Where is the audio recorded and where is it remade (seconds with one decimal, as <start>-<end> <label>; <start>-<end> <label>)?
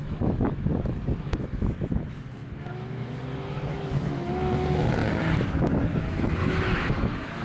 0.0-0.7 remade; 0.7-1.2 recorded; 1.2-5.0 remade; 5.0-6.0 recorded; 6.0-7.4 remade